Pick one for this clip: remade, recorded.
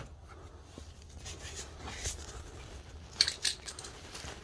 recorded